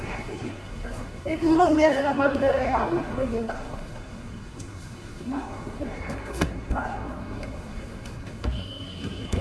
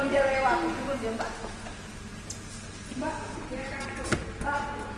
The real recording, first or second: second